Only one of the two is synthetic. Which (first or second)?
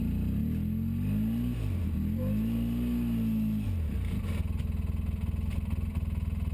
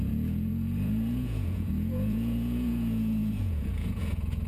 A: second